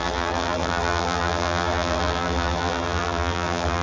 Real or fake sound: fake